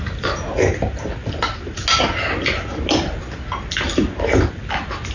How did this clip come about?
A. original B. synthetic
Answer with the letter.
A